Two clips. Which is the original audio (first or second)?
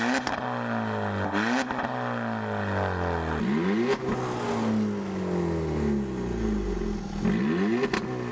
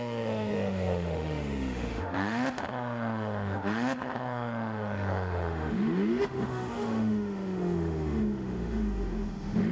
first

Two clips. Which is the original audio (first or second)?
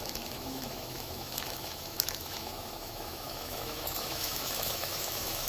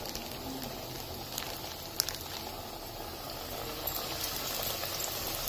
second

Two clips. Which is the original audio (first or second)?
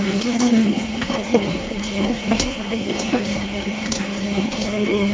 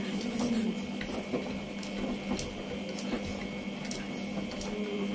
second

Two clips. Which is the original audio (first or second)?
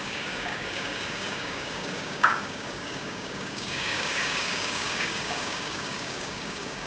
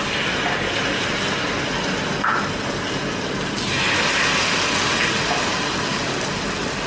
second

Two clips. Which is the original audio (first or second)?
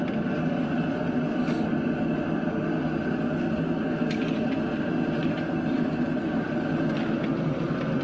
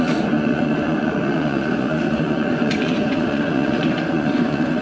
first